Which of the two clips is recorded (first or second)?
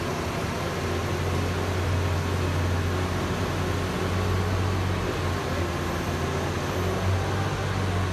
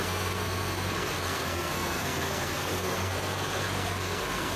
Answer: first